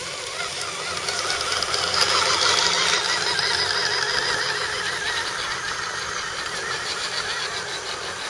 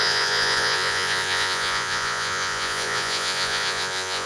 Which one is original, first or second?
first